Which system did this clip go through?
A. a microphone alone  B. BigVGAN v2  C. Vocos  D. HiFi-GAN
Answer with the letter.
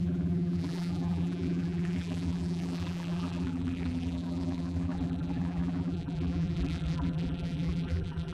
B